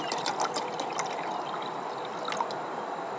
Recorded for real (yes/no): yes